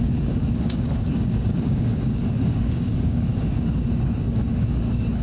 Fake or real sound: fake